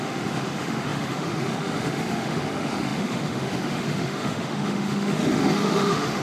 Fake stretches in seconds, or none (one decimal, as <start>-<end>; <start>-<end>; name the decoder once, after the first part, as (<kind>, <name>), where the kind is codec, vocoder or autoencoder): 0.0-6.2 (autoencoder, DAC-VAE)